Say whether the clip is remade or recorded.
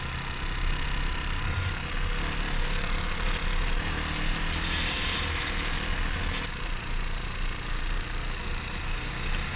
recorded